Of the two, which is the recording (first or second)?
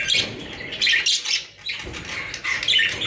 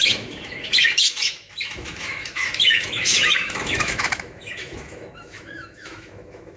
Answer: first